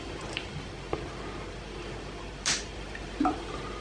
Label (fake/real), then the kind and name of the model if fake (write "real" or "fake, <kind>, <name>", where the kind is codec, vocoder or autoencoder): real